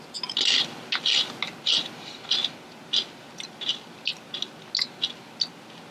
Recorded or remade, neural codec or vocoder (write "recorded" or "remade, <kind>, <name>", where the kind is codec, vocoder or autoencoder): recorded